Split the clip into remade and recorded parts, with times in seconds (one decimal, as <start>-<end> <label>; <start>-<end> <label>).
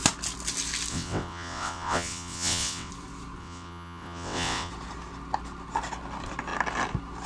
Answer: 0.0-0.9 recorded; 0.9-2.9 remade; 2.9-3.4 recorded; 3.4-4.7 remade; 4.7-7.3 recorded